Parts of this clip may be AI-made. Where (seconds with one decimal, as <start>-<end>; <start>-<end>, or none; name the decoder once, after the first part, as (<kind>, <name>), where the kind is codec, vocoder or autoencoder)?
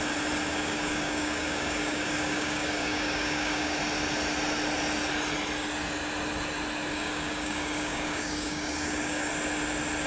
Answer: 0.5-3.8 (codec, DAC); 6.9-9.3